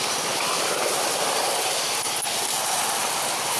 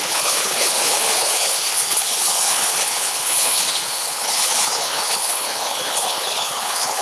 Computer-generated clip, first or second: second